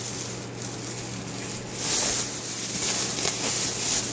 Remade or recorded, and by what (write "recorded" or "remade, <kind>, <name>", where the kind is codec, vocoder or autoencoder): recorded